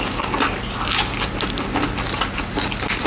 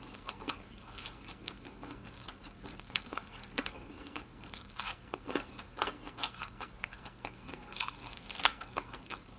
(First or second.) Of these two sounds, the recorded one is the first